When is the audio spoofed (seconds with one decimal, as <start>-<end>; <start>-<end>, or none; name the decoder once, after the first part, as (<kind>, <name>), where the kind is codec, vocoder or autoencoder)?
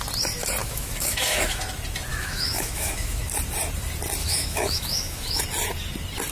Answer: 0.6-1.6 (autoencoder, DAC-VAE); 2.1-3.2; 4.2-5.4